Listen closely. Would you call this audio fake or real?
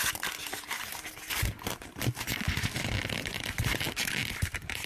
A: real